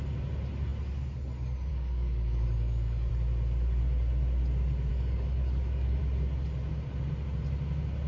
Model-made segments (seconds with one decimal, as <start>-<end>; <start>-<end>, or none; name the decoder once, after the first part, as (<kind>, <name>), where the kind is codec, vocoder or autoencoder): 1.7-3.1 (codec, DAC); 4.9-6.0